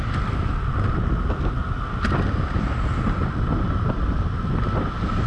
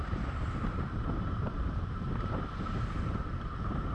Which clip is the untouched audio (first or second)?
first